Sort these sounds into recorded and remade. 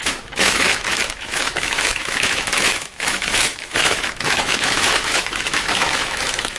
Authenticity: remade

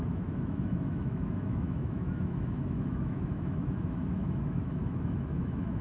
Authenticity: remade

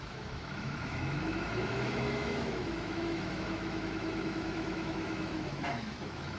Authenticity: remade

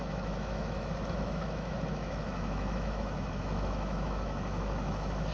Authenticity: remade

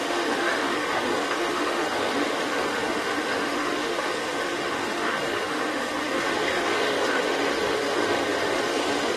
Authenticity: remade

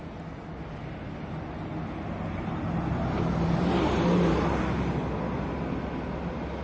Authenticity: recorded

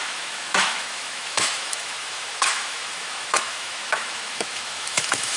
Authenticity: remade